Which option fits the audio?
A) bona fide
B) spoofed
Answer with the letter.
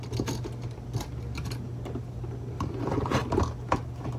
A